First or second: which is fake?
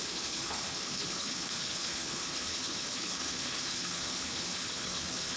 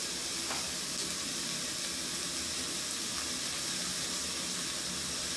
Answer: first